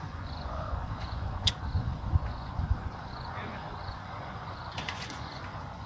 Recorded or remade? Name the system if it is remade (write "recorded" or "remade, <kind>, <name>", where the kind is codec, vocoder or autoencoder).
remade, vocoder, Vocos